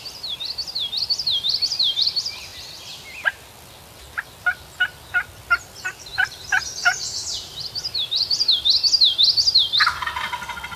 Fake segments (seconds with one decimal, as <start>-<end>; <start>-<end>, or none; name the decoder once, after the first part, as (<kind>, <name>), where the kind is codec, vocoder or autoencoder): 6.1-8.5 (vocoder, BigVGAN v2)